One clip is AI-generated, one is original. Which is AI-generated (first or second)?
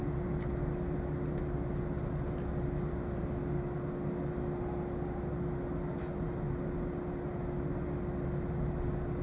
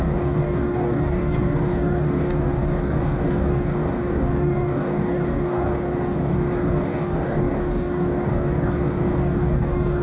second